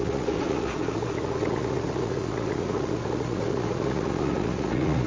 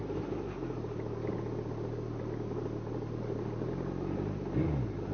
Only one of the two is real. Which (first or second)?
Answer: second